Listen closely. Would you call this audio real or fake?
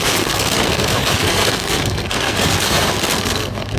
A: fake